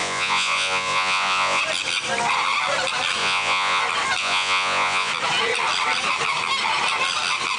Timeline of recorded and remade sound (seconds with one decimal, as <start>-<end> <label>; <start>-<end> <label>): 0.0-1.6 remade; 1.6-3.2 recorded; 3.2-3.8 remade; 3.8-4.2 recorded; 4.2-5.1 remade; 5.1-7.6 recorded